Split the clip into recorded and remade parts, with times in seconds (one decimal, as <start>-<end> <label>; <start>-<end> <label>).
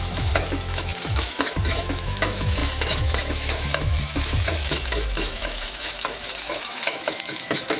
0.0-7.8 remade